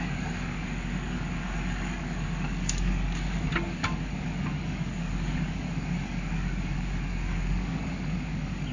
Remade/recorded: remade